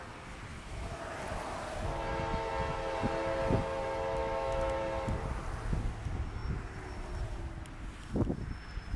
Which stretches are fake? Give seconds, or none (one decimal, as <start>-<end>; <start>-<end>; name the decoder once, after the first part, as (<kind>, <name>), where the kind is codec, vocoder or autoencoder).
0.5-1.0 (autoencoder, DAC-VAE); 4.2-4.8